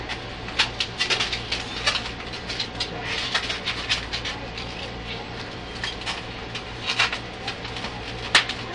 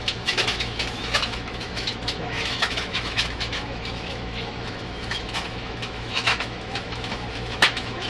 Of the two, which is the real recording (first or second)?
first